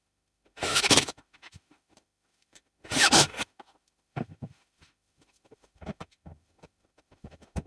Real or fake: fake